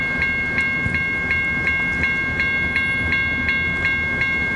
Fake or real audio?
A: real